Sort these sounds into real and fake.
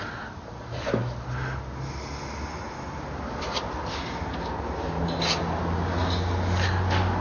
real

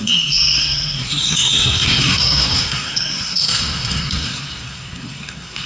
fake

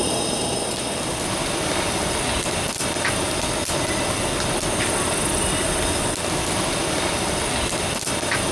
real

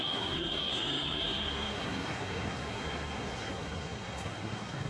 fake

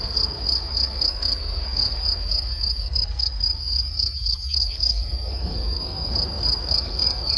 fake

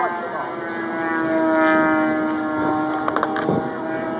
real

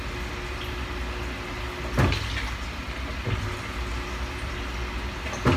real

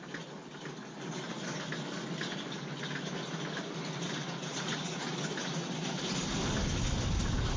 real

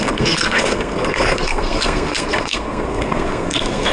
fake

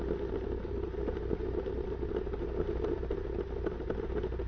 real